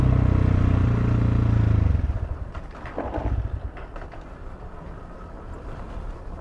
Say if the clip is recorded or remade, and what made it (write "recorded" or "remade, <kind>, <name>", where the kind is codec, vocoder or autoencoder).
recorded